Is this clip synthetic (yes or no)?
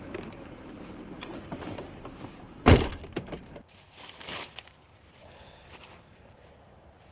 yes